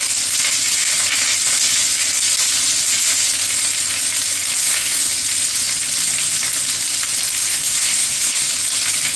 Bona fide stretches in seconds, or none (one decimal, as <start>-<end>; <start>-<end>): 0.0-4.6; 5.1-7.5; 8.5-9.2